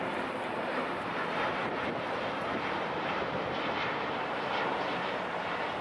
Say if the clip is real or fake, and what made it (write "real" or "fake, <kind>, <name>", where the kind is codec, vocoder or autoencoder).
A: fake, vocoder, BigVGAN v2